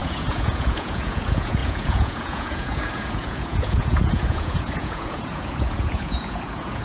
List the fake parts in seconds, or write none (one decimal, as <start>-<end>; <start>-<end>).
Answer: 0.0-6.8